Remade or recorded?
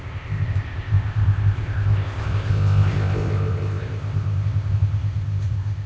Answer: remade